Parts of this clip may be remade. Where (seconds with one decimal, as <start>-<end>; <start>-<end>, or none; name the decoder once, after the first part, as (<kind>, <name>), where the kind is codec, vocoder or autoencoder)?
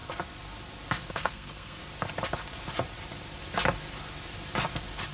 1.1-1.8 (codec, SNAC)